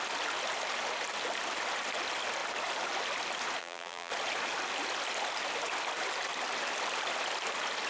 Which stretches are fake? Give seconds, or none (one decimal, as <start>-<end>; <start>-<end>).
3.6-4.1